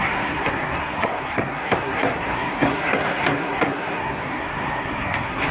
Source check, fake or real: fake